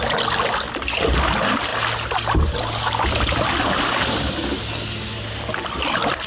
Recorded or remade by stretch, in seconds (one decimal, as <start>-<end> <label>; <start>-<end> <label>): 0.0-6.3 recorded